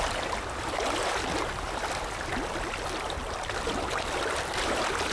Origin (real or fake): real